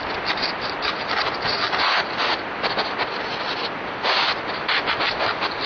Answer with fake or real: fake